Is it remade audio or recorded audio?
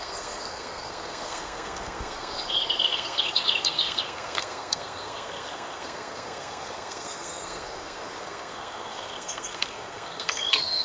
remade